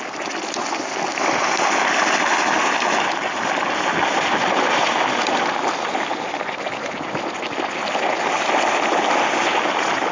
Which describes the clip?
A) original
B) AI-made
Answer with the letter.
A